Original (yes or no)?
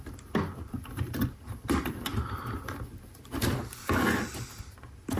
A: no